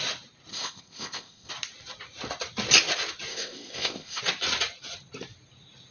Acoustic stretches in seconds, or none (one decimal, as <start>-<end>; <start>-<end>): 0.0-0.5; 1.5-3.3; 4.2-5.9